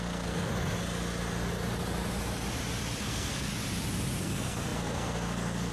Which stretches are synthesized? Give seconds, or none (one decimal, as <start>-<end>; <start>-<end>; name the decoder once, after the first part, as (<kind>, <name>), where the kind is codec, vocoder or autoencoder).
0.0-0.5 (codec, SNAC); 3.0-3.5; 4.2-5.7